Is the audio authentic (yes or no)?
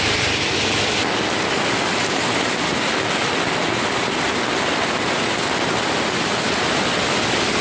yes